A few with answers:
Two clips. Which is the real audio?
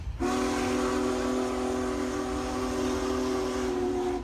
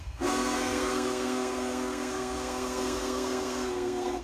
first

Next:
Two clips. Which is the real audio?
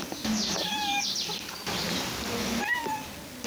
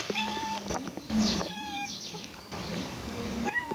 first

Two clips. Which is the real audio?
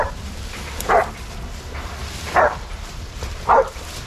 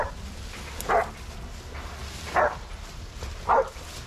second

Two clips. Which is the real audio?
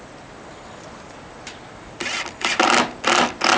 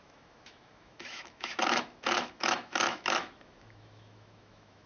first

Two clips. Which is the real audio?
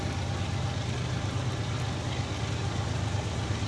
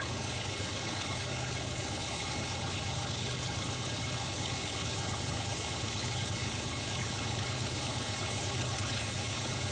first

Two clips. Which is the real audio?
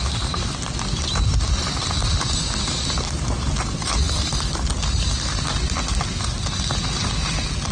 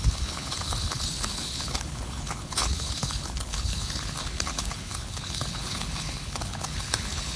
first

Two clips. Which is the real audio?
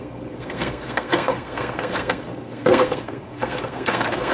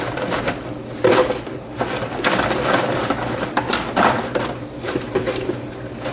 second